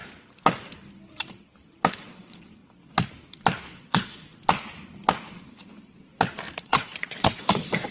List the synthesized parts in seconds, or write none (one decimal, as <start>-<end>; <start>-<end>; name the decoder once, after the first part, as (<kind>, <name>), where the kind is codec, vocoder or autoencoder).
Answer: 1.9-2.6 (vocoder, Vocos); 3.7-4.3; 6.6-7.9